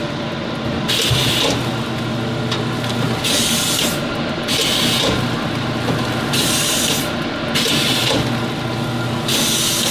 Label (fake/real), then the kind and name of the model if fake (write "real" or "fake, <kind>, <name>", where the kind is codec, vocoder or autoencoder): real